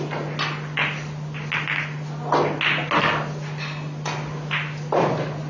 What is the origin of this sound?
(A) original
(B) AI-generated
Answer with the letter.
A